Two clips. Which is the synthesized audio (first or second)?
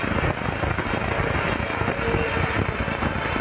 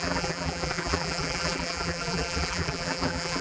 second